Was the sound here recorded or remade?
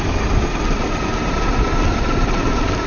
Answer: recorded